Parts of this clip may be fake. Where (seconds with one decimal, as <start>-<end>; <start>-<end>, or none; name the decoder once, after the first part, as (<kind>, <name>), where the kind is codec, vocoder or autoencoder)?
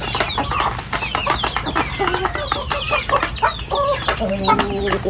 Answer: none